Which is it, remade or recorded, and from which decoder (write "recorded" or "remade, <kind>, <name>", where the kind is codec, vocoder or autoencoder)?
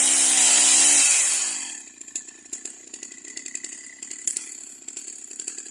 recorded